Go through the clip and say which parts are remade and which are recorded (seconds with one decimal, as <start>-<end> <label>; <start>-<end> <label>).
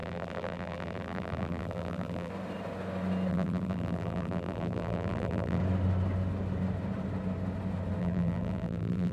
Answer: 0.0-2.3 remade; 2.3-3.3 recorded; 3.3-5.6 remade; 5.6-8.0 recorded; 8.0-9.1 remade